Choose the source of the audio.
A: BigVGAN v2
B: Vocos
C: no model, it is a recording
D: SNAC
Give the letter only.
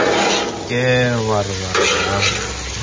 C